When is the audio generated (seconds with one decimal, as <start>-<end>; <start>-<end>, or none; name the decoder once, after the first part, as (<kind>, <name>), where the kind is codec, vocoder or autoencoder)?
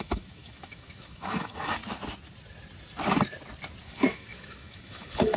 0.0-1.8 (autoencoder, DAC-VAE); 3.8-5.4